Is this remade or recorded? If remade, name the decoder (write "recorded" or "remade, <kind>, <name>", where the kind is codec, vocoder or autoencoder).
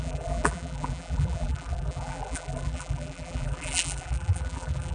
remade, vocoder, BigVGAN v2